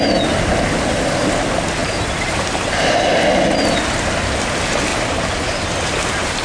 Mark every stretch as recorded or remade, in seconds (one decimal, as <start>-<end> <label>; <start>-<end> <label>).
0.0-1.8 recorded; 1.8-2.7 remade; 2.7-4.9 recorded; 4.9-6.4 remade